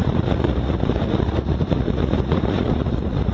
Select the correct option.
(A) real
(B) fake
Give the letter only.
B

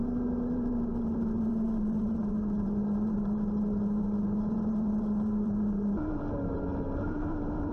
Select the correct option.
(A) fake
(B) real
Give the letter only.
A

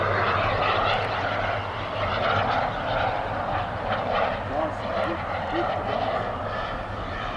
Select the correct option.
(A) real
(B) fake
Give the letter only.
A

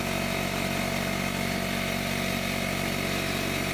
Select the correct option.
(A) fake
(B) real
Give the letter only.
B